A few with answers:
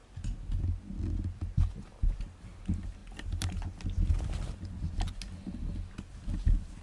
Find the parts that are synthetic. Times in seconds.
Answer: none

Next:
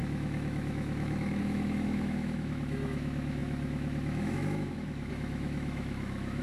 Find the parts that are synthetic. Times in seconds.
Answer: 0.0-6.4

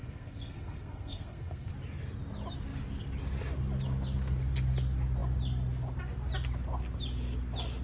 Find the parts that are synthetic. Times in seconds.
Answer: 0.0-1.7

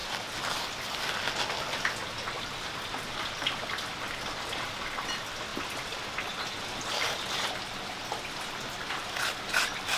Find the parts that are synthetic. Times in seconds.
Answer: none

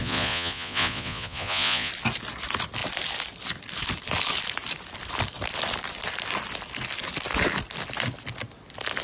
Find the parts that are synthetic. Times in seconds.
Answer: 0.0-1.9

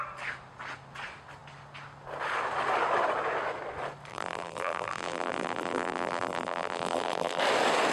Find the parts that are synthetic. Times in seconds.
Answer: 4.1-7.4

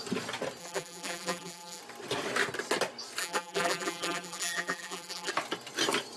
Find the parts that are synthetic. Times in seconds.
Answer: 0.6-1.8; 3.2-5.3

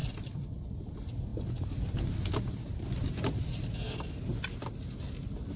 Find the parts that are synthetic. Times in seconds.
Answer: 0.0-0.8